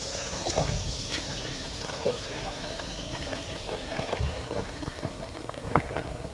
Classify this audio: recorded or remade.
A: remade